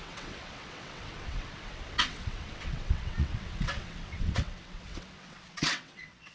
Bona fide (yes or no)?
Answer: no